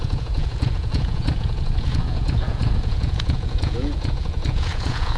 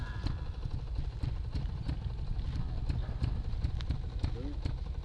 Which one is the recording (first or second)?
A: second